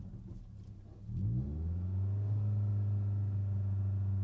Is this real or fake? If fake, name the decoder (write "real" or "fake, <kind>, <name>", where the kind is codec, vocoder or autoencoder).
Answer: real